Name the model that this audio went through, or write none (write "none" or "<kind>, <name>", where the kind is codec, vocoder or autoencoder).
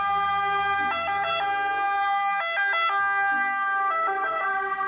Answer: none